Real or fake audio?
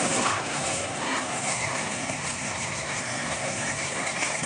fake